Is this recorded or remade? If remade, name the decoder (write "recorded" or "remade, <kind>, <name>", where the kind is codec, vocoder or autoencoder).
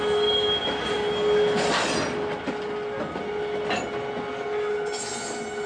recorded